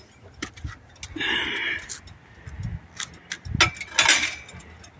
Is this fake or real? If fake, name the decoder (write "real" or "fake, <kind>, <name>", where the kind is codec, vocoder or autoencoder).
real